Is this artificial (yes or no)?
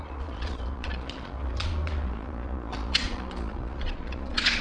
yes